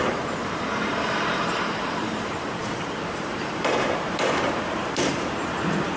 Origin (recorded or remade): remade